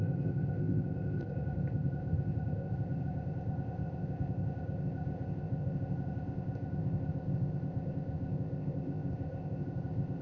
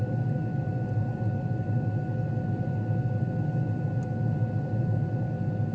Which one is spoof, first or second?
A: first